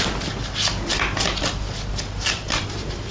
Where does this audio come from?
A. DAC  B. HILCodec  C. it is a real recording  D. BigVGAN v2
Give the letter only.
C